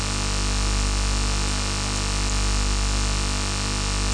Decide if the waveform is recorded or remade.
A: recorded